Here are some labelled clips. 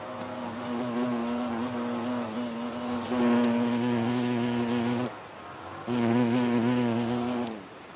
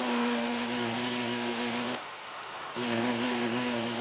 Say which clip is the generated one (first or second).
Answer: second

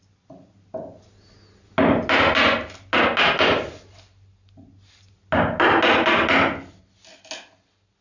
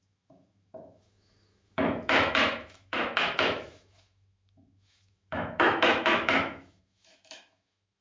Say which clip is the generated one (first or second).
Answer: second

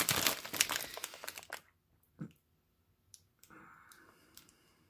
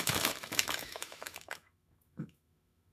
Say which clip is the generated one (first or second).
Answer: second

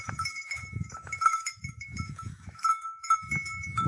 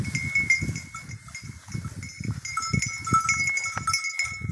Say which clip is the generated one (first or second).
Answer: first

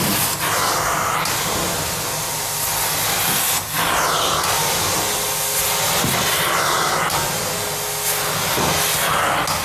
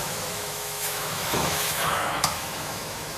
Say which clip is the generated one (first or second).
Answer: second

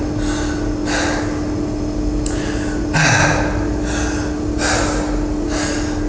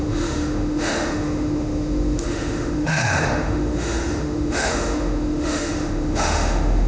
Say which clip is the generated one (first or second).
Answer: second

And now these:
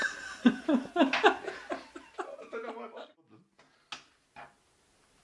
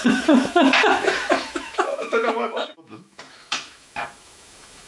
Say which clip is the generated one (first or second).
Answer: second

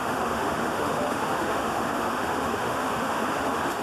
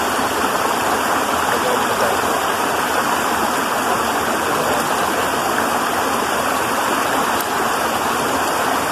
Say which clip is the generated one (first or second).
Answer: first